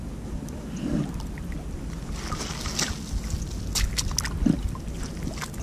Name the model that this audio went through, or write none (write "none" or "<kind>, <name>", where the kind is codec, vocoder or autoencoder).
none